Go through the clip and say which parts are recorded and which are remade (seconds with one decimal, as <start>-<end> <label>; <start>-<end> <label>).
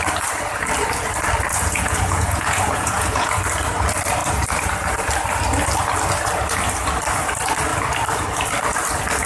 0.0-1.5 recorded; 1.5-3.4 remade; 3.4-9.3 recorded